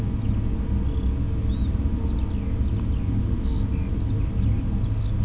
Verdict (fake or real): real